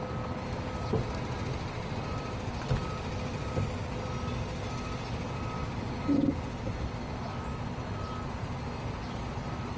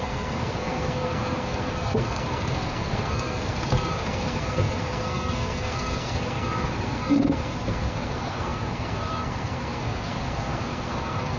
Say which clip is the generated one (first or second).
second